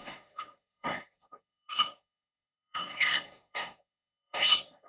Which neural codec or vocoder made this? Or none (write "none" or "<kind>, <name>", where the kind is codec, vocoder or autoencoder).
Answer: codec, SNAC